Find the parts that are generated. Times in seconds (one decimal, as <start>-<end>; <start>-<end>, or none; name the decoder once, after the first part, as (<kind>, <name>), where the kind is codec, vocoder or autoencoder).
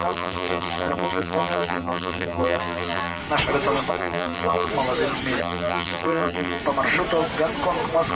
0.0-3.2 (vocoder, BigVGAN v2); 3.9-4.7; 5.4-6.6